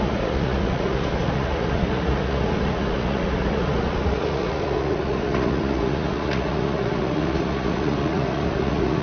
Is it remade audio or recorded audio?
remade